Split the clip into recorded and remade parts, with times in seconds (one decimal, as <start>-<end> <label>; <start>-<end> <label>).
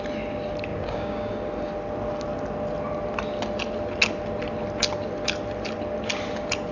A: 0.0-0.7 recorded; 0.7-1.3 remade; 1.3-6.7 recorded